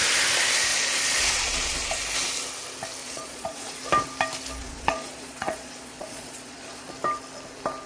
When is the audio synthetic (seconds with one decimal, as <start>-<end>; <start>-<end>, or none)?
0.7-2.0; 3.0-3.8; 4.6-6.9